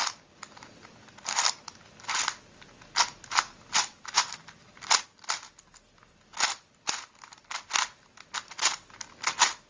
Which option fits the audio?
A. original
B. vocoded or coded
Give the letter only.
A